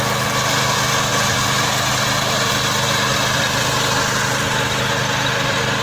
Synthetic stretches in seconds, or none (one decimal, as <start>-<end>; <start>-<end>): 1.1-2.5